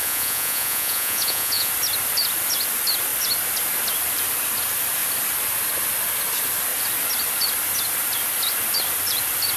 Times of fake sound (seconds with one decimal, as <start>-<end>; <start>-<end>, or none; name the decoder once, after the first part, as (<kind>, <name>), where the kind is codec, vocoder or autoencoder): 0.0-1.7 (vocoder, Vocos)